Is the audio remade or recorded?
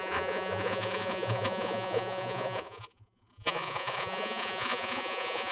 remade